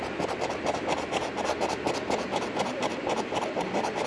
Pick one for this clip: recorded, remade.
recorded